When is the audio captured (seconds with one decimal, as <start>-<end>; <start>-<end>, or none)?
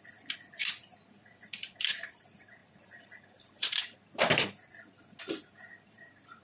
0.0-2.6; 3.8-6.4